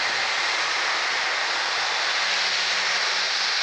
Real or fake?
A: real